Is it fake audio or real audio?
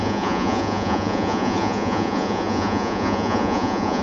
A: fake